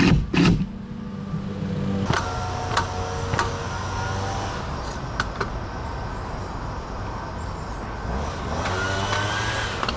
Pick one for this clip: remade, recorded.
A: recorded